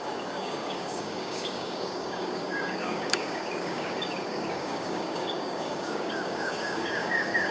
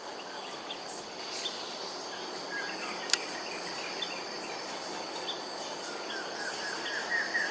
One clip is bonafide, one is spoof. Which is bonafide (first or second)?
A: second